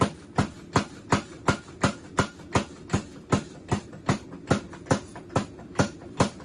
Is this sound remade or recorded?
recorded